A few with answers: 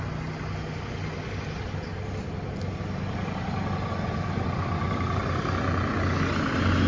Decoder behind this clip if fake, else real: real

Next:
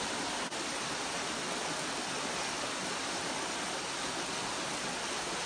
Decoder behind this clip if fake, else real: real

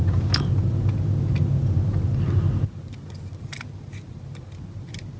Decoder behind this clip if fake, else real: real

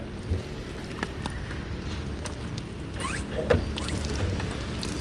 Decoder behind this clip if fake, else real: real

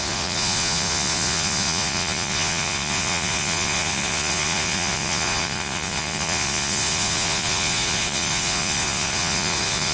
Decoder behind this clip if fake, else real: fake, vocoder, Vocos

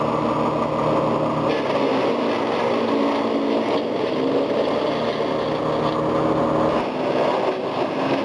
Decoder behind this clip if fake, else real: real